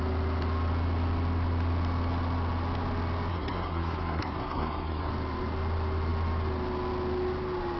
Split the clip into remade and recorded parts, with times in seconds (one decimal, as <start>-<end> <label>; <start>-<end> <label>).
0.0-3.3 recorded; 3.3-5.1 remade; 5.1-7.8 recorded